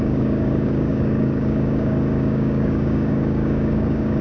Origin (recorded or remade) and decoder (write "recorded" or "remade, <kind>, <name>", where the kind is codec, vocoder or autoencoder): remade, codec, DAC